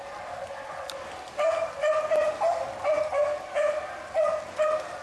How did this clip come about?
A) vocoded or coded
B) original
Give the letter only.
B